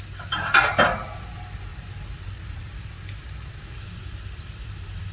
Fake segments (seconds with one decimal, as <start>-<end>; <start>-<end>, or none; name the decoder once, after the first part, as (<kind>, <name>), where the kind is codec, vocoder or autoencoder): 1.7-5.1 (vocoder, BigVGAN v2)